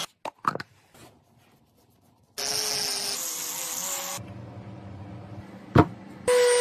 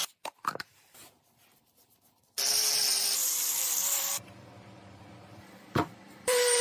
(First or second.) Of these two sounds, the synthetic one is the second